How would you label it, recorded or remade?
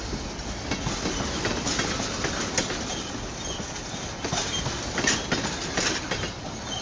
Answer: recorded